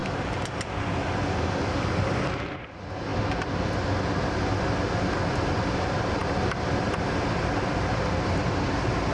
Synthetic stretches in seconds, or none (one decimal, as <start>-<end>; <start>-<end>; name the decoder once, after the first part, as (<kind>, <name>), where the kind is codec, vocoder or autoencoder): none